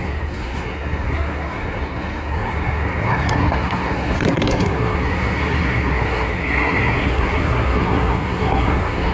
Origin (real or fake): fake